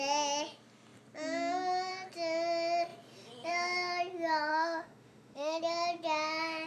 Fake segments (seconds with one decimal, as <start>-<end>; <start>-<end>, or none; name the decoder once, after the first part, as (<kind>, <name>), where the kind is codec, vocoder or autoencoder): 4.5-5.6 (autoencoder, DAC-VAE)